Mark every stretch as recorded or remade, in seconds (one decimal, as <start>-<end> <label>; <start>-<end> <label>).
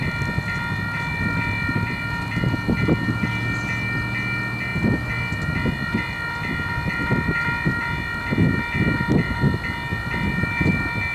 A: 0.0-11.1 recorded